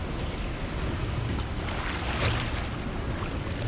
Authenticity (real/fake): real